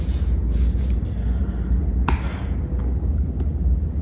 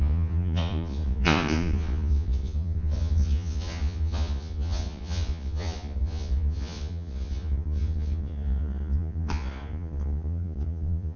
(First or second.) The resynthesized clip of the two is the second